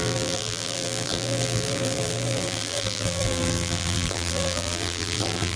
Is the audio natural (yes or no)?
no